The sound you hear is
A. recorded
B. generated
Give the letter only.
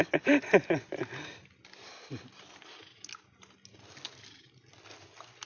A